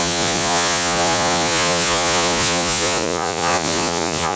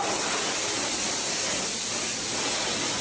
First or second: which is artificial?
first